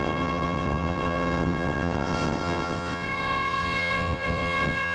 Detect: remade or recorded remade